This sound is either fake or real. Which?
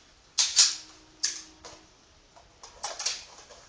real